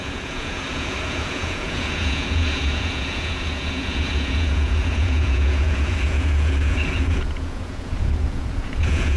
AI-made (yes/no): yes